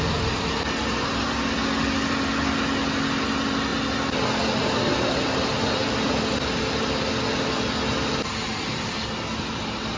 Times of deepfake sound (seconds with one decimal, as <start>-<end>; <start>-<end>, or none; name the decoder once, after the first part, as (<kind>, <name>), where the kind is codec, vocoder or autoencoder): none